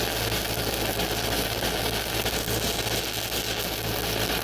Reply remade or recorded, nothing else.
recorded